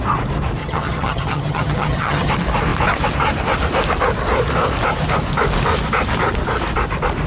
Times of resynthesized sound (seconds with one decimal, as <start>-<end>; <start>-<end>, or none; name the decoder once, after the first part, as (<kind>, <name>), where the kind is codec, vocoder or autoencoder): 0.6-2.3 (vocoder, HiFi-GAN)

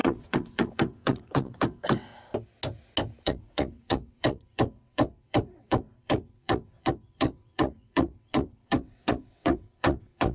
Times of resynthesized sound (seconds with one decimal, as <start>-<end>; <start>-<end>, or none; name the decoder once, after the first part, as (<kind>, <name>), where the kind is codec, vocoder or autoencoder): 0.0-2.1 (vocoder, WaveNeXt); 3.2-10.3